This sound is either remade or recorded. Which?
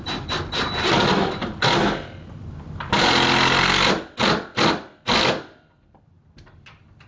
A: remade